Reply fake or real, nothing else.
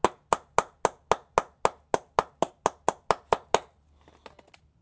real